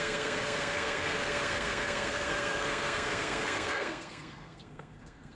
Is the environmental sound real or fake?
fake